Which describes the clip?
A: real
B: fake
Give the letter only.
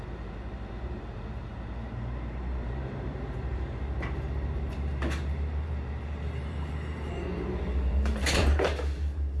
B